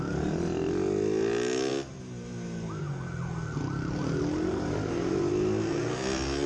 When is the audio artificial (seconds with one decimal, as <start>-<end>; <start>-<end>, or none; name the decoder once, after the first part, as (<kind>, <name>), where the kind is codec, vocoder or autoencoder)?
none